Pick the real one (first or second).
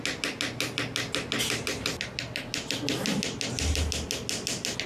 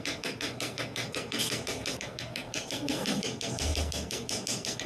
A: first